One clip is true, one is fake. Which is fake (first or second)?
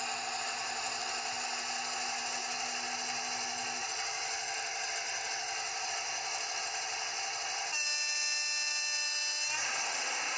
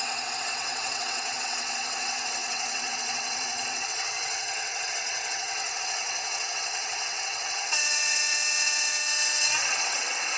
second